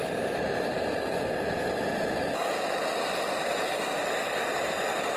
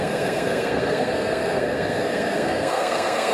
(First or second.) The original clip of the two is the first